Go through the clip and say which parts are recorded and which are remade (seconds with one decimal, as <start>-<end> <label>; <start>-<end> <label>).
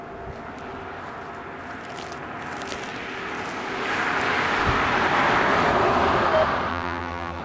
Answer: 0.0-6.7 recorded; 6.7-7.4 remade